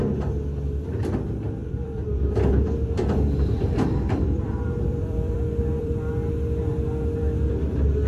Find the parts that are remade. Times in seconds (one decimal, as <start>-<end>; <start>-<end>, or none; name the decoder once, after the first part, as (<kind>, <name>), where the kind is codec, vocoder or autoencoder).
1.6-5.9 (vocoder, BigVGAN v2)